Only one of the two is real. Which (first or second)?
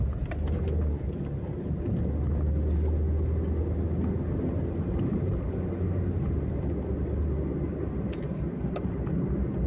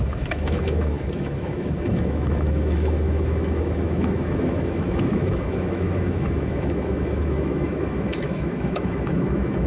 first